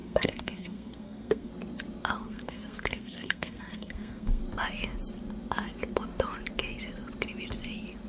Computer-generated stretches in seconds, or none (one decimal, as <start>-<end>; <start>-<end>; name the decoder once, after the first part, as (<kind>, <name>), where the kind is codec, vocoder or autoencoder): 0.0-1.5 (codec, SNAC); 2.2-4.4